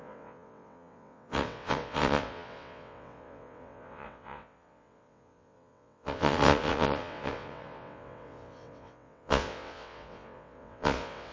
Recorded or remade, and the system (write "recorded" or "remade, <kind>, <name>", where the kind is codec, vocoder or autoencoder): remade, vocoder, WaveNeXt